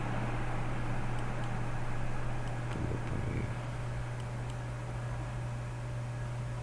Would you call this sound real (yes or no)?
yes